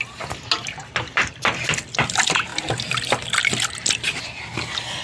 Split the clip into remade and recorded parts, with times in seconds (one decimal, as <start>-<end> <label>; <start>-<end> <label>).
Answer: 0.0-5.0 recorded